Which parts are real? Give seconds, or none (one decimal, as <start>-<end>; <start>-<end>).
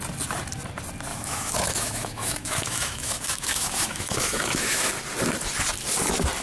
0.0-1.1; 4.9-6.4